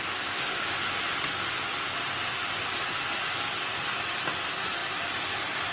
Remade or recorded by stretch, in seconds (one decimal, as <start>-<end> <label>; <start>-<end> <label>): 0.0-5.7 recorded

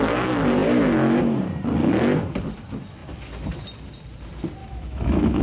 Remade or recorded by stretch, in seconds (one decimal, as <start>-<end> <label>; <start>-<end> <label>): 0.0-4.6 recorded; 4.6-5.4 remade

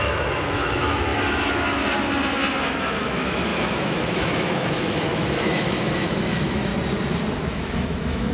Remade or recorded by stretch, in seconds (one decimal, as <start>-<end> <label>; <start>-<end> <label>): 0.0-1.1 remade; 1.1-2.8 recorded; 2.8-6.7 remade; 6.7-7.5 recorded; 7.5-8.3 remade